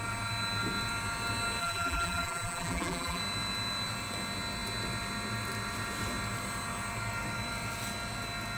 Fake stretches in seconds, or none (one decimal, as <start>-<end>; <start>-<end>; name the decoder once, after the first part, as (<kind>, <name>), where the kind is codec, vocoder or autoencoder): 1.6-3.2 (vocoder, BigVGAN v2)